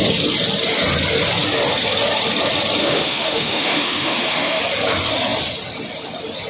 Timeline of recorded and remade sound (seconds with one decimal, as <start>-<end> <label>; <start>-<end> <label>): 0.0-2.8 recorded; 2.8-4.6 remade; 4.6-6.5 recorded